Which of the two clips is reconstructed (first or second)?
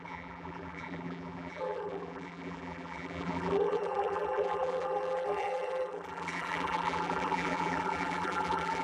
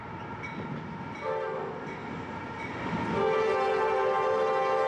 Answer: first